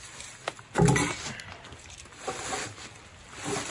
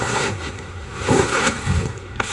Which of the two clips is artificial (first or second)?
second